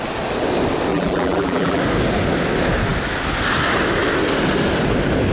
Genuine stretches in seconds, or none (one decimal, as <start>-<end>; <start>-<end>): 0.0-0.9; 1.8-5.3